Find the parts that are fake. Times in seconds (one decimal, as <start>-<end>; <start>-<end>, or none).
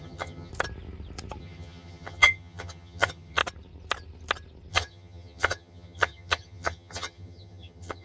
0.0-0.5; 1.4-3.4; 4.7-8.0